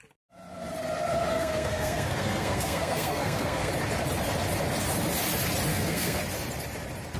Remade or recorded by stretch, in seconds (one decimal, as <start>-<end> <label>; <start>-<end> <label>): 0.0-1.3 recorded; 1.3-3.7 remade; 3.7-5.7 recorded; 5.7-6.2 remade; 6.2-7.2 recorded